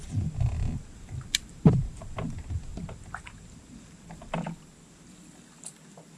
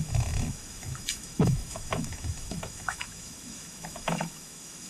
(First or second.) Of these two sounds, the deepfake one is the second